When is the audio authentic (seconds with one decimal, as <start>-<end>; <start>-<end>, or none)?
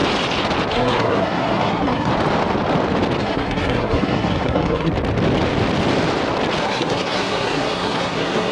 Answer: 0.0-0.7; 2.1-3.2; 4.9-6.6